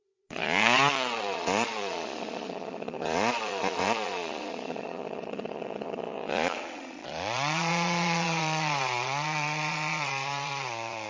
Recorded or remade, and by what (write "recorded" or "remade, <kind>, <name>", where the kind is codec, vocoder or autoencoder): remade, vocoder, Vocos